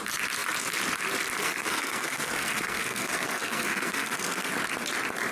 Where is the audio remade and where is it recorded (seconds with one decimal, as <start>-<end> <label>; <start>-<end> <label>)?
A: 0.0-1.4 recorded; 1.4-4.5 remade; 4.5-5.3 recorded